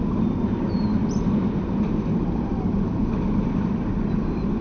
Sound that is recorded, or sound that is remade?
recorded